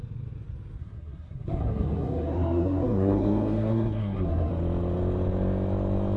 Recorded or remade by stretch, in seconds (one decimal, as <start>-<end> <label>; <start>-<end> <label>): 0.0-0.8 recorded; 0.8-4.5 remade; 4.5-6.2 recorded

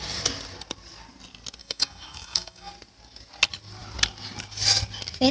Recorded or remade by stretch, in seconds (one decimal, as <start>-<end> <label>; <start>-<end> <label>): 0.0-1.6 recorded; 1.6-2.7 remade; 2.7-5.3 recorded

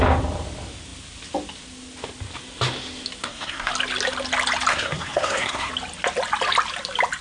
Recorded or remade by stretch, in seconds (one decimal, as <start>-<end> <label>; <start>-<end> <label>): 0.0-3.2 recorded; 3.2-3.7 remade; 3.7-4.7 recorded; 4.7-5.7 remade; 5.7-7.2 recorded

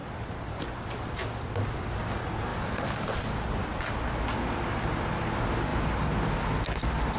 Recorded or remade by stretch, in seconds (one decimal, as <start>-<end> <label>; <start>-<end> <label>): 0.0-0.9 remade; 0.9-5.7 recorded; 5.7-6.2 remade; 6.2-7.2 recorded

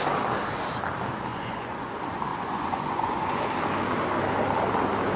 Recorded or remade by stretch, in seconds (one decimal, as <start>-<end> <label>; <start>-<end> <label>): 0.0-1.3 recorded; 1.3-1.9 remade; 1.9-2.3 recorded; 2.3-3.5 remade; 3.5-5.2 recorded

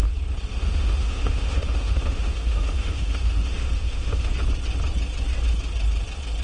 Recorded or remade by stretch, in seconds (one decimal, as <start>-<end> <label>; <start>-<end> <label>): 0.0-0.5 recorded; 0.5-4.3 remade; 4.3-6.4 recorded

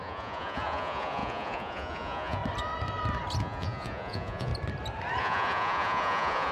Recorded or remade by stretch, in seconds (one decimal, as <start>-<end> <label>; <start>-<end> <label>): 0.0-2.4 remade; 2.4-3.4 recorded; 3.4-4.5 remade; 4.5-5.2 recorded; 5.2-6.5 remade